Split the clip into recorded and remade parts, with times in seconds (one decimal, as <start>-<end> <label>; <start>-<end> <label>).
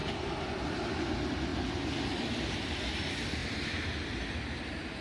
0.0-5.0 recorded